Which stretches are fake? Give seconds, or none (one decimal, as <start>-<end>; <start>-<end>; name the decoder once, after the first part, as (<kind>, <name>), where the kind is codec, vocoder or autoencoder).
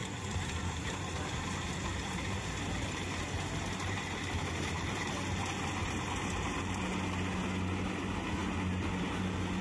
0.0-5.1 (vocoder, BigVGAN v2); 5.8-6.8